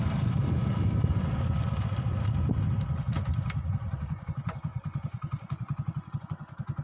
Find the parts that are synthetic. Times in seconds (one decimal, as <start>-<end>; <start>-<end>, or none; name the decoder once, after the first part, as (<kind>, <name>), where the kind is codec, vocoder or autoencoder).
4.0-6.8 (vocoder, Vocos)